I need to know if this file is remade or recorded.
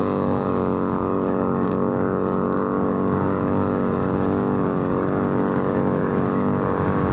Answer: remade